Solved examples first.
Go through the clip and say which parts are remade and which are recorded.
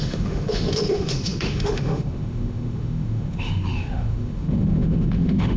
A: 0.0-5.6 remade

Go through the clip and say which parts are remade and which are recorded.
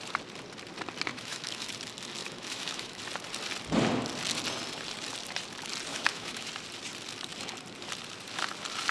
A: 0.0-1.1 recorded; 1.1-1.7 remade; 1.7-2.2 recorded; 2.2-3.0 remade; 3.0-5.9 recorded; 5.9-6.5 remade; 6.5-8.9 recorded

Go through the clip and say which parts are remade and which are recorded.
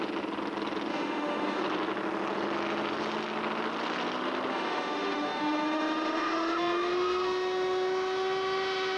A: 0.0-0.9 recorded; 0.9-1.6 remade; 1.6-4.5 recorded; 4.5-9.0 remade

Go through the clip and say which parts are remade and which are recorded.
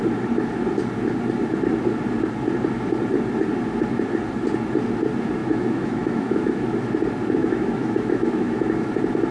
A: 0.0-5.4 recorded; 5.4-6.8 remade; 6.8-7.4 recorded; 7.4-8.9 remade; 8.9-9.3 recorded